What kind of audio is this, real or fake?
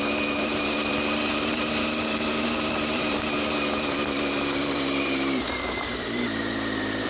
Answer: fake